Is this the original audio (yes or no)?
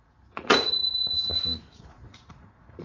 no